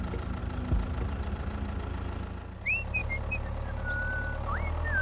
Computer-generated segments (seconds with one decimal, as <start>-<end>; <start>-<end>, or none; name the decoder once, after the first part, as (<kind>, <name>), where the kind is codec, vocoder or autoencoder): none